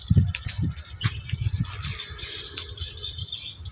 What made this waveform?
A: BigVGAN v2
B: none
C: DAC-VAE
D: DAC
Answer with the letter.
B